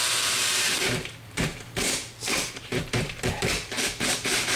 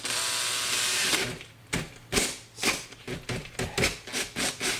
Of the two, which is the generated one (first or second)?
first